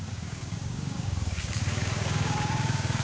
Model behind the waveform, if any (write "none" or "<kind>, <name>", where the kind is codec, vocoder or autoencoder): codec, DAC